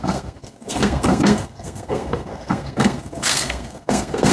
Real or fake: fake